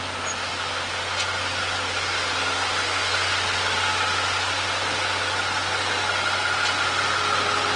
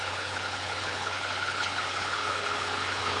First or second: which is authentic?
first